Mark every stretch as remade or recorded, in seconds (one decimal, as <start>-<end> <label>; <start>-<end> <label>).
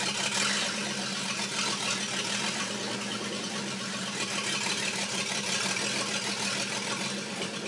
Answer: 0.0-7.7 recorded